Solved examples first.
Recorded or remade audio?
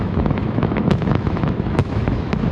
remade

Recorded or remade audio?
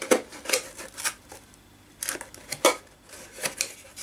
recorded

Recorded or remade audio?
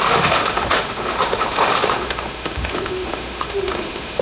remade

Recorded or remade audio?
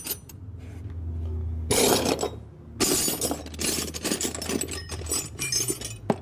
recorded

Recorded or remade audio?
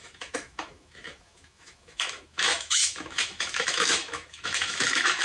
remade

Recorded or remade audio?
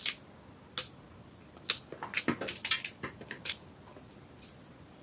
recorded